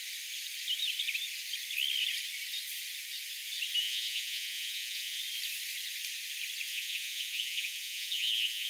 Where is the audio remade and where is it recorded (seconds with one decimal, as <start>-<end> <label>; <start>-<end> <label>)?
0.0-3.8 recorded; 3.8-5.2 remade; 5.2-6.7 recorded; 6.7-8.7 remade